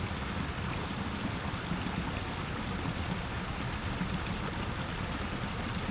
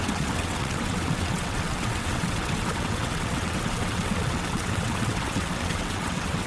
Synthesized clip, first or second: second